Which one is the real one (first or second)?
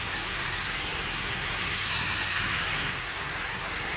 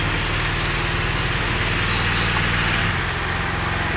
second